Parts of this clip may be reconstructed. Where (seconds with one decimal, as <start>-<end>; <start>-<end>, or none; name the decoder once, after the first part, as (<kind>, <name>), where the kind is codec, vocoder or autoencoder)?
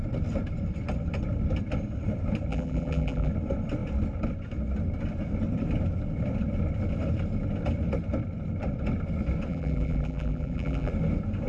2.5-3.3 (vocoder, BigVGAN v2); 9.5-10.9